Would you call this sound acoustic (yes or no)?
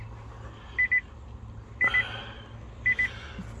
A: yes